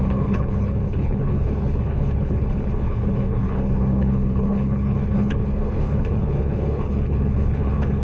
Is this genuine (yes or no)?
no